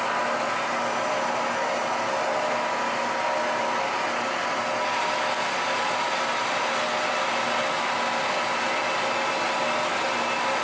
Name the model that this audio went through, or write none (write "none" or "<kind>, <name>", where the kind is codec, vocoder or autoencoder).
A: none